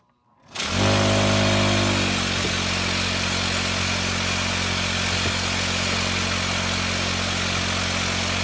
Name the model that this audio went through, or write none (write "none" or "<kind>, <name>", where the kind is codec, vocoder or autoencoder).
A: none